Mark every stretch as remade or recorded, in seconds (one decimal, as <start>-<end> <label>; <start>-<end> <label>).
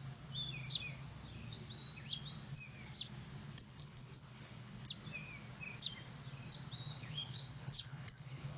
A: 0.0-3.4 recorded; 3.4-4.9 remade; 4.9-6.9 recorded; 6.9-8.6 remade